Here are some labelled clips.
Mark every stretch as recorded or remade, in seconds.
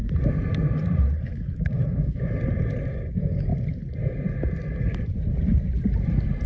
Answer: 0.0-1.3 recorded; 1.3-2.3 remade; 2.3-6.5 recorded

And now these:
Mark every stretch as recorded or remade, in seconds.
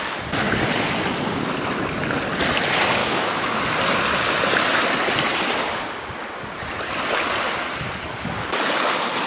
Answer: 0.0-3.0 recorded; 3.0-3.6 remade; 3.6-9.3 recorded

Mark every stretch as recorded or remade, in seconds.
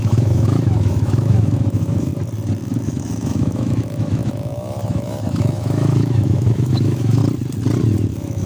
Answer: 0.0-2.1 remade; 2.1-2.6 recorded; 2.6-7.2 remade; 7.2-8.1 recorded; 8.1-8.5 remade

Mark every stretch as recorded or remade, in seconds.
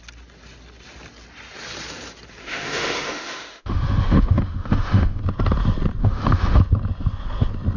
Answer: 0.0-2.4 recorded; 2.4-5.2 remade; 5.2-6.0 recorded; 6.0-6.6 remade; 6.6-7.8 recorded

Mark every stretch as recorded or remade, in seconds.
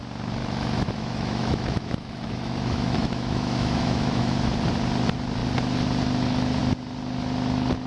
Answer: 0.0-0.4 recorded; 0.4-4.5 remade; 4.5-7.9 recorded